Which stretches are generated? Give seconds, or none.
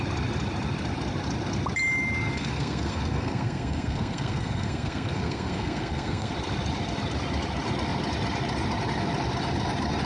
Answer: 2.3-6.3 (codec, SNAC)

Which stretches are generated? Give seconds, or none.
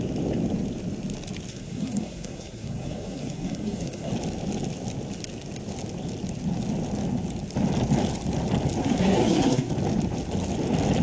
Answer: 1.5-4.1 (codec, SNAC); 8.8-9.7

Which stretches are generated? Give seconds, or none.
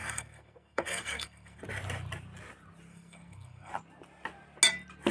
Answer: 0.0-1.6 (codec, SNAC); 2.9-3.7